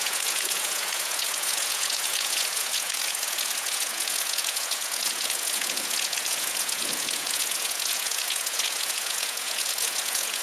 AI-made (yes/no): yes